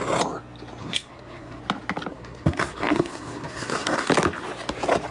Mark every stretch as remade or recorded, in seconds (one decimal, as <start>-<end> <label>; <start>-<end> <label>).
0.0-0.8 recorded; 0.8-1.6 remade; 1.6-2.1 recorded; 2.1-4.1 remade; 4.1-5.1 recorded